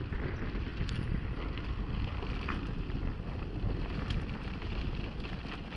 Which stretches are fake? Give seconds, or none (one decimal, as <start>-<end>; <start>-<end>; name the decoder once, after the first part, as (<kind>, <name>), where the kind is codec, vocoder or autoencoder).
none